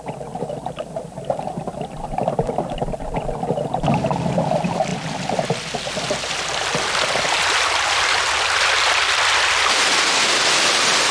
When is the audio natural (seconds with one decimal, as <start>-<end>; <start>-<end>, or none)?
0.0-11.1